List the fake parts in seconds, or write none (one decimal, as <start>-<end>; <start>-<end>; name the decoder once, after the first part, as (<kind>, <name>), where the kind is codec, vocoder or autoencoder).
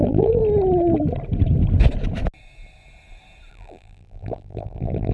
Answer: 0.0-0.4 (vocoder, BigVGAN v2); 3.5-5.1